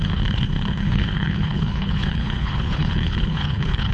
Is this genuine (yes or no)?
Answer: no